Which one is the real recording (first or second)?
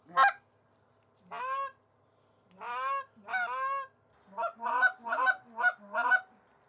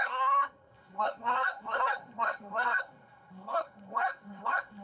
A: first